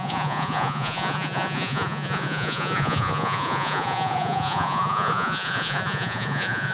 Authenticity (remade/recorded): remade